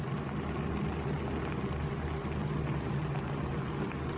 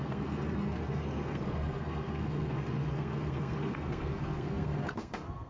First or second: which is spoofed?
second